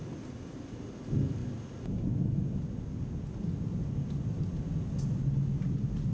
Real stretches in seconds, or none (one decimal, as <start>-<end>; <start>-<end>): 0.0-6.1